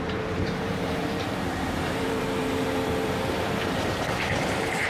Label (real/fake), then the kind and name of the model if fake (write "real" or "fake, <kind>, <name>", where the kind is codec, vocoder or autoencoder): fake, vocoder, BigVGAN v2